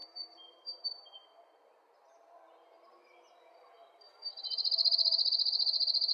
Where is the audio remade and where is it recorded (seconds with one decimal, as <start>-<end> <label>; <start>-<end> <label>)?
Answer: 0.0-2.9 remade; 2.9-6.1 recorded